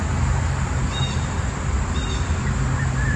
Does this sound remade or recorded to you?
recorded